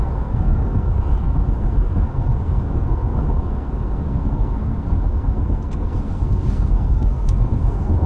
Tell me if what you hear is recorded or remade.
remade